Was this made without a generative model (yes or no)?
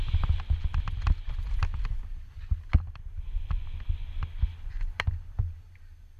yes